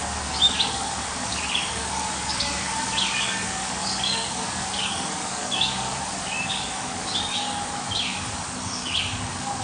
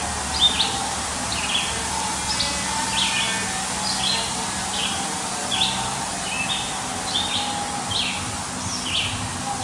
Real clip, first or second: second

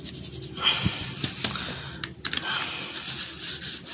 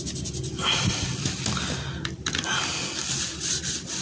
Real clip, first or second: first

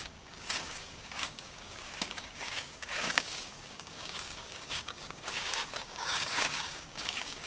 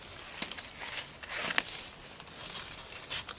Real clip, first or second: second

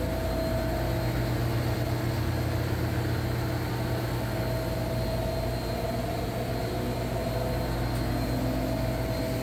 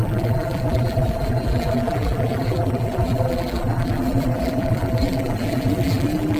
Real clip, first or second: first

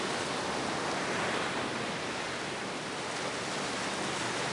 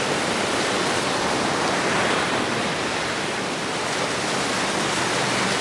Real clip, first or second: first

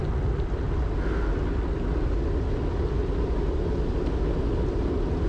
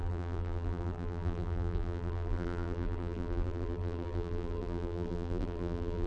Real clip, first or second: first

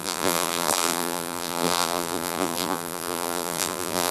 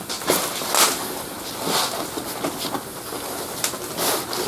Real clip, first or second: second